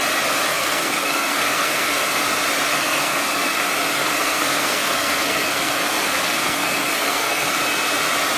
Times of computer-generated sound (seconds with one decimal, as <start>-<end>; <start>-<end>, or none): 0.5-2.2; 2.7-3.6; 4.0-7.6